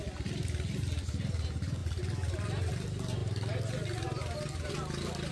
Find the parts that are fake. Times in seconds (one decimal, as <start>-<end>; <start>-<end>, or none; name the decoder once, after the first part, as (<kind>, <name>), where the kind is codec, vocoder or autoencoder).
none

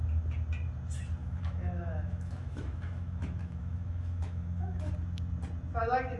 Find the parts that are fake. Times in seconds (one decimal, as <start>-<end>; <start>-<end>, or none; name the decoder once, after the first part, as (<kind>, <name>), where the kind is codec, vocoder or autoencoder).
1.2-4.9 (autoencoder, DAC-VAE)

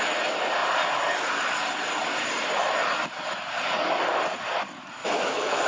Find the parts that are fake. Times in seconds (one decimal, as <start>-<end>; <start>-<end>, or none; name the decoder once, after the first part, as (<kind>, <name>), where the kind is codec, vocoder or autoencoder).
5.0-5.7 (autoencoder, DAC-VAE)

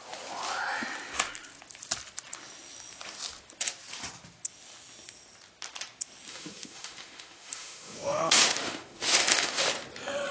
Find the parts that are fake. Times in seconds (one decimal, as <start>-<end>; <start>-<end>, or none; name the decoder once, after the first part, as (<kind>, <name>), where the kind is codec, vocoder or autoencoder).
6.3-9.7 (autoencoder, DAC-VAE)